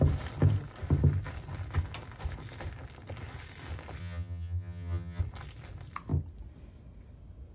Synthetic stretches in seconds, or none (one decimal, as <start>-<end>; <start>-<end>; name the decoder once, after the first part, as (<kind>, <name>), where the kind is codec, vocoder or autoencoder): 4.0-5.2 (vocoder, HiFi-GAN)